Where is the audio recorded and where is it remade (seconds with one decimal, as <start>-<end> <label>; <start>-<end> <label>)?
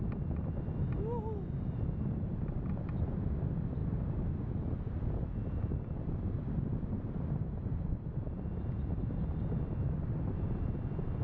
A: 0.0-11.2 recorded